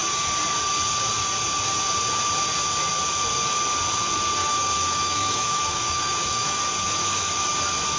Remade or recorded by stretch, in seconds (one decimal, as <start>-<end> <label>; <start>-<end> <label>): 0.0-4.4 recorded; 4.4-6.6 remade; 6.6-7.0 recorded; 7.0-7.5 remade; 7.5-8.0 recorded

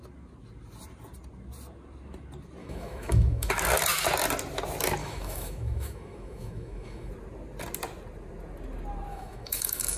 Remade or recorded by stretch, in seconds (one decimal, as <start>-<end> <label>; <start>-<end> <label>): 0.0-2.6 recorded; 2.6-3.5 remade; 3.5-5.0 recorded; 5.0-7.1 remade; 7.1-9.1 recorded; 9.1-10.0 remade

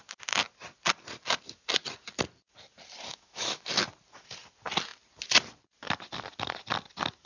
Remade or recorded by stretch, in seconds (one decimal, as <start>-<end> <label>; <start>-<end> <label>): 0.0-3.1 recorded; 3.1-3.7 remade; 3.7-7.3 recorded

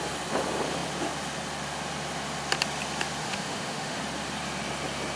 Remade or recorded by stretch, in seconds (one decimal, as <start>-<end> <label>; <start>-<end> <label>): 0.0-3.2 recorded; 3.2-4.0 remade; 4.0-5.2 recorded

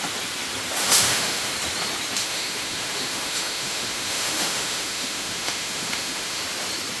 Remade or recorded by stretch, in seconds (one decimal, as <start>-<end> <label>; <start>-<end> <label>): 0.0-0.8 recorded; 0.8-1.5 remade; 1.5-2.2 recorded; 2.2-6.4 remade; 6.4-7.0 recorded

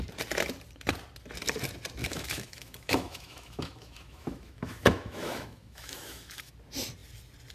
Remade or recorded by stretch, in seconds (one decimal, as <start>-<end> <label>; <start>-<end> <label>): 0.0-2.0 recorded; 2.0-6.5 remade; 6.5-7.5 recorded